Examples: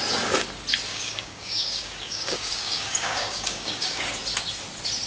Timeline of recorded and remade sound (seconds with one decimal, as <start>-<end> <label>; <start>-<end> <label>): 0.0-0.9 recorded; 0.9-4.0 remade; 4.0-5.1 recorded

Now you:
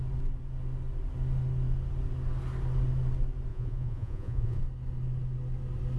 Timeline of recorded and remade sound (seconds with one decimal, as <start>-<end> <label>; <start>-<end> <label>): 0.0-3.5 recorded; 3.5-4.6 remade; 4.6-6.0 recorded

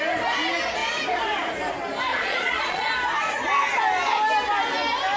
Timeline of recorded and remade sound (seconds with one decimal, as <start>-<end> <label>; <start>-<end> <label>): 0.0-2.1 recorded; 2.1-2.9 remade; 2.9-5.2 recorded